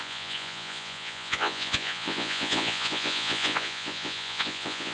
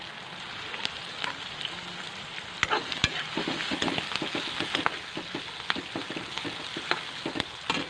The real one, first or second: second